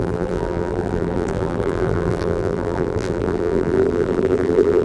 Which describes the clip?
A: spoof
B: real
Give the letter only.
A